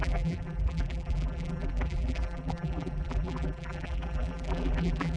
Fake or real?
fake